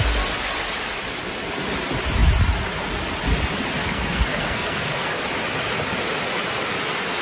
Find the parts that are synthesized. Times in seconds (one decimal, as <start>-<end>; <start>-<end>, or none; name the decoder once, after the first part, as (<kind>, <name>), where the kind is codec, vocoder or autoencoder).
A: 3.8-5.2 (codec, SNAC)